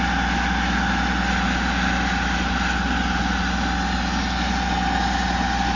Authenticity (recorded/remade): recorded